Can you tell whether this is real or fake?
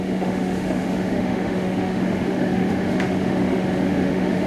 fake